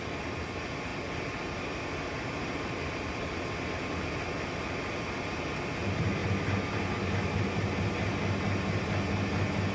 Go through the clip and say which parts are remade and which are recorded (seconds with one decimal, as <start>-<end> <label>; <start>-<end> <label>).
0.0-9.7 recorded